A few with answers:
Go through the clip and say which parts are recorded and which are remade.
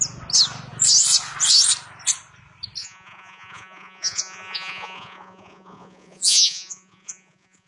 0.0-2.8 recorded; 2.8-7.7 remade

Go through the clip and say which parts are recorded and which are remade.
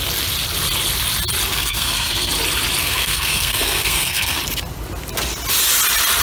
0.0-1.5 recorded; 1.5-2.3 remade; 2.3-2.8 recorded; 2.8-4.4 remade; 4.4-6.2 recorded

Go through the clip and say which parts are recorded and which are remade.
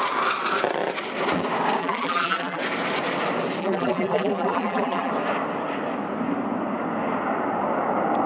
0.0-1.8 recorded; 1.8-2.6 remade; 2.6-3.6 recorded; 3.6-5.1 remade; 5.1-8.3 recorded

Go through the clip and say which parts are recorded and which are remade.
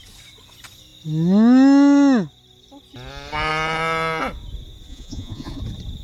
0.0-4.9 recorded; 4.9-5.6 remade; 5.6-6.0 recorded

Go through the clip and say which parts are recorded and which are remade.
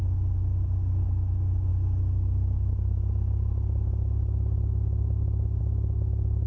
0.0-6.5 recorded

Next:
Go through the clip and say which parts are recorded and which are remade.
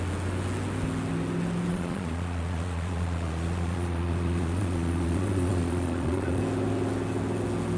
0.0-1.7 recorded; 1.7-6.4 remade; 6.4-7.8 recorded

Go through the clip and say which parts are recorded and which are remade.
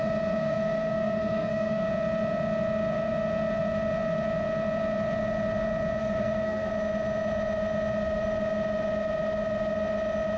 0.0-0.4 recorded; 0.4-1.9 remade; 1.9-6.0 recorded; 6.0-6.7 remade; 6.7-10.4 recorded